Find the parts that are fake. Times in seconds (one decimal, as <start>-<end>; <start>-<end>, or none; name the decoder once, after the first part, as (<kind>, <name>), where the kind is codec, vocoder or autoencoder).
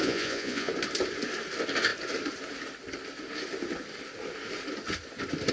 0.0-0.7 (vocoder, Vocos)